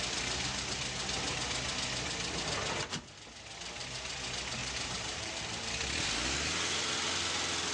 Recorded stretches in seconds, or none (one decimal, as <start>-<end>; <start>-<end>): 0.0-4.6; 5.4-7.7